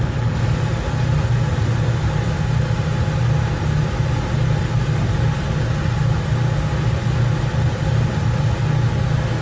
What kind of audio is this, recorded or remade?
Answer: recorded